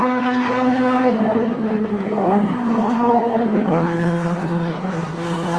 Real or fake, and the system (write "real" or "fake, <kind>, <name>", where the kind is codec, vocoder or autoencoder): fake, codec, SNAC